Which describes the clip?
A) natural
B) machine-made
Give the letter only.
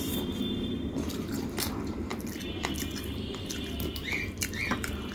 B